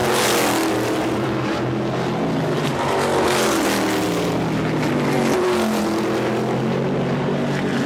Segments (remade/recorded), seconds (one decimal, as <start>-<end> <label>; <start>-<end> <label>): 0.0-7.9 recorded